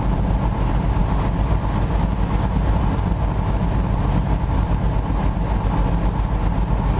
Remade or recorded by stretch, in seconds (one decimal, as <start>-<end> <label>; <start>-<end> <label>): 0.0-7.0 recorded